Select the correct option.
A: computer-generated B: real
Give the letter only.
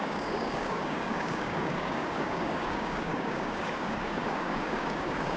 A